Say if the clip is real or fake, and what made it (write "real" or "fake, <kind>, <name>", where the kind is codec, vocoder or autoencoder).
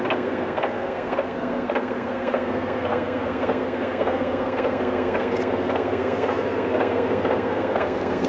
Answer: fake, codec, SNAC